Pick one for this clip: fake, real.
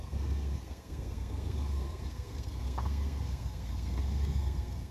fake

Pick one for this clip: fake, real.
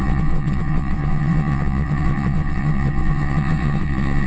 fake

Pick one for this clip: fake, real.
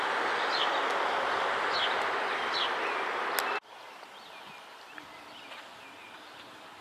real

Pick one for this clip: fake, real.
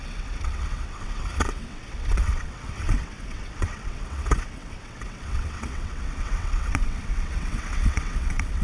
fake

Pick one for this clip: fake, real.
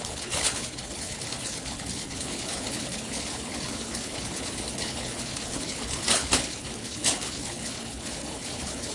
fake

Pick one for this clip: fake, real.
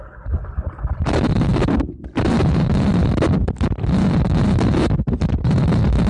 fake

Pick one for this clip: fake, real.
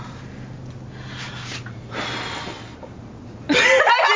real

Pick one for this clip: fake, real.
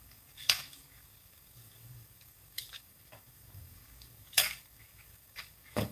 fake